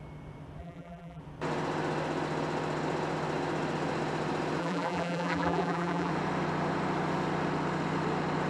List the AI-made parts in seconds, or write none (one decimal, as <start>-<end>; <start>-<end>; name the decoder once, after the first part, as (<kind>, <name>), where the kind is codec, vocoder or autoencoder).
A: 0.6-1.2 (vocoder, BigVGAN v2); 4.6-6.1